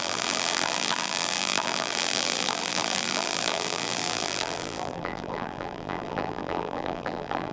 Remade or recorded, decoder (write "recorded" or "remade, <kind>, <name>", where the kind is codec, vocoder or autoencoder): remade, vocoder, BigVGAN v2